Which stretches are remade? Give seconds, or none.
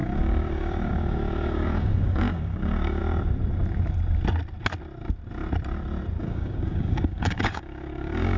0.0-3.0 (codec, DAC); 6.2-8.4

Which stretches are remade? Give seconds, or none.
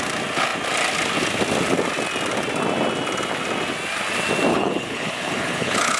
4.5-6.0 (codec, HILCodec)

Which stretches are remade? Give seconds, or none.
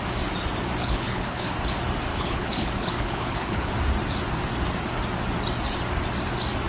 0.8-1.5 (codec, HILCodec); 2.1-3.7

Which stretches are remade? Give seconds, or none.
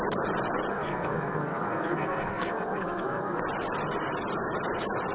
0.7-3.4 (codec, SNAC)